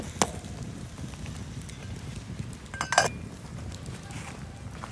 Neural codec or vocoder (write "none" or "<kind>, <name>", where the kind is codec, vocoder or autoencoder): none